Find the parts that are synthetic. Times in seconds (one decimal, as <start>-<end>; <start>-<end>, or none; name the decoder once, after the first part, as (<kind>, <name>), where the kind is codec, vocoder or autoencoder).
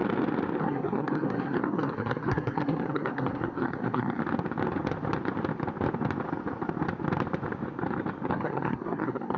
0.6-4.2 (codec, SNAC); 8.3-9.4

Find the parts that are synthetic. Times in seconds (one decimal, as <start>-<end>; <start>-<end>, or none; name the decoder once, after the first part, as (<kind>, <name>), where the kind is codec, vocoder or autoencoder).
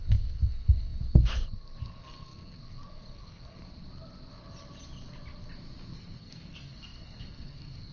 0.0-3.6 (codec, SNAC); 5.9-7.9